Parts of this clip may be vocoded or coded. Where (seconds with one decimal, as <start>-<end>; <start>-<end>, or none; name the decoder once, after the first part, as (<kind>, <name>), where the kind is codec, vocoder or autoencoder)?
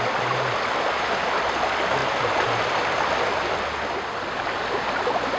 none